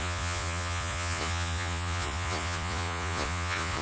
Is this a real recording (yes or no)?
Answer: no